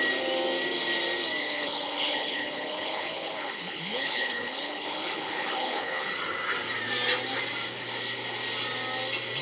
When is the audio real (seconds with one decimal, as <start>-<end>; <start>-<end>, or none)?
0.0-1.4; 6.1-9.4